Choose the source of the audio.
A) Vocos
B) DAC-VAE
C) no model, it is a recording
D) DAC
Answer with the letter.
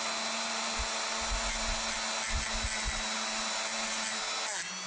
C